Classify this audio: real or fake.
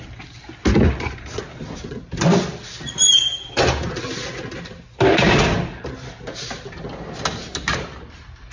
real